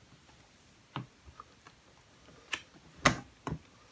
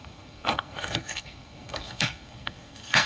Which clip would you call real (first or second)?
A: first